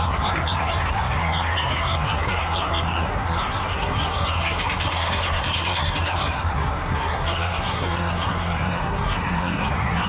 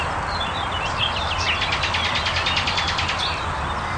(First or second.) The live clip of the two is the second